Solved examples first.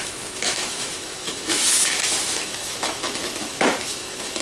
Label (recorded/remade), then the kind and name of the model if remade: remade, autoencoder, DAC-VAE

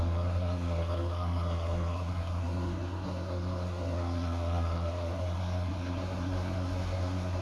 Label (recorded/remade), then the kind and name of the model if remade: remade, codec, SNAC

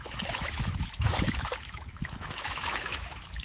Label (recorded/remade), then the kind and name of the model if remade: remade, autoencoder, DAC-VAE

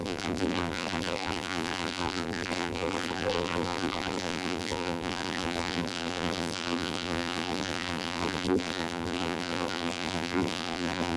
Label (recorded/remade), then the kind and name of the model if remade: remade, vocoder, BigVGAN v2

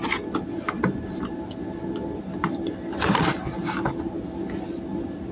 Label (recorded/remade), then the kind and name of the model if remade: recorded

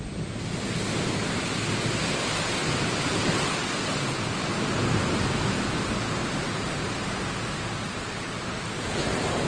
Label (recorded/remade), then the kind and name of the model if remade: recorded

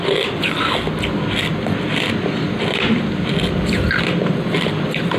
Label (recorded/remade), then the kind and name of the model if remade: recorded